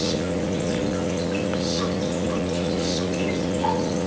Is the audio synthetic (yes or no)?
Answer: yes